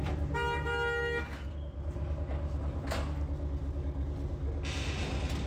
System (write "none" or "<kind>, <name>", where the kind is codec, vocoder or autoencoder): none